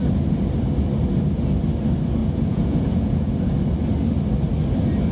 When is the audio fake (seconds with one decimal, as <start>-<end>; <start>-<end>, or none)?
2.2-3.3